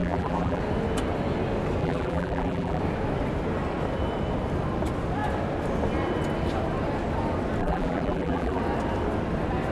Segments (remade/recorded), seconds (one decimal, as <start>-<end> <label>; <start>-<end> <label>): 0.0-0.6 remade; 0.6-1.8 recorded; 1.8-2.8 remade; 2.8-7.6 recorded; 7.6-8.6 remade; 8.6-9.7 recorded